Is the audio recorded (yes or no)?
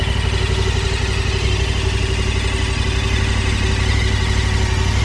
yes